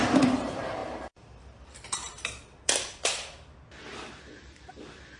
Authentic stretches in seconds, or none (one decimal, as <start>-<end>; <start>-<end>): none